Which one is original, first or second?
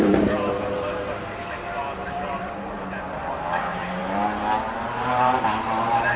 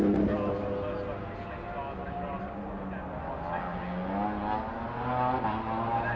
second